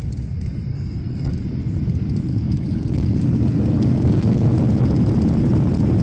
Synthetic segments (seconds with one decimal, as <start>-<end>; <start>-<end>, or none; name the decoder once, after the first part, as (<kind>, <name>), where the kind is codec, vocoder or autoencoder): 0.7-1.3 (codec, SNAC); 2.3-4.6